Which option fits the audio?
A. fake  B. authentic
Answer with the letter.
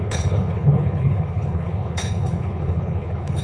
A